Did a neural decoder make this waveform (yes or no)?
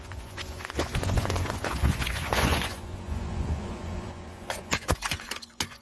yes